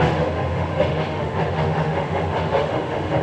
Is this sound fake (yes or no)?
yes